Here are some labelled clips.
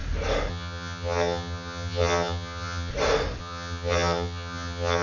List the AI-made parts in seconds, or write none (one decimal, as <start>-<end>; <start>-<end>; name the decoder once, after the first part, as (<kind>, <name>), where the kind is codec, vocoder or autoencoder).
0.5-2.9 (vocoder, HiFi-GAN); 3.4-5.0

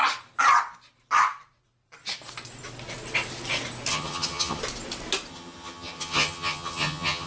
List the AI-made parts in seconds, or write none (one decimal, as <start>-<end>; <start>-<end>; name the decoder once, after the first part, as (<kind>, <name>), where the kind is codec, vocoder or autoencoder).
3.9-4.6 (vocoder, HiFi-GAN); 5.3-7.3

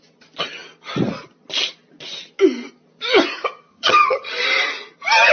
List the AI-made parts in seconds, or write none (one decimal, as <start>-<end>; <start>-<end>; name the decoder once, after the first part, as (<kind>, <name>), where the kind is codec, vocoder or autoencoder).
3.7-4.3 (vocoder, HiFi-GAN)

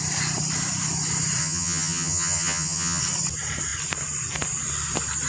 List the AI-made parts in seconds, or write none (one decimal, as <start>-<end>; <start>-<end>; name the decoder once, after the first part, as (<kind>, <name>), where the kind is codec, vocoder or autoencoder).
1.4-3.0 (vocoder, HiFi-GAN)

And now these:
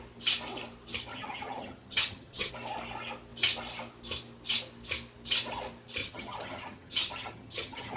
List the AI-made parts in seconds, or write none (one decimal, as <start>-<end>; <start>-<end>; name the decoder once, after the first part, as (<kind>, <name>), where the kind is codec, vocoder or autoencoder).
1.1-2.5 (vocoder, HiFi-GAN); 6.0-8.0

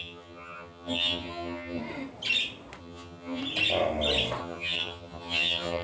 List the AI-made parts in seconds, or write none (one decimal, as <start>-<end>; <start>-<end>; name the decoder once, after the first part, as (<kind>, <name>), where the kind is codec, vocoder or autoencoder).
0.0-1.8 (vocoder, HiFi-GAN); 2.8-3.4; 4.4-5.8

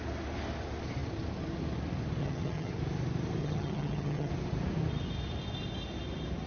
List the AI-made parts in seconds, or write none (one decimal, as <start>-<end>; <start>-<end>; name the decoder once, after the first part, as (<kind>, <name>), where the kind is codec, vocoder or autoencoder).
2.2-2.7 (vocoder, HiFi-GAN); 3.4-4.3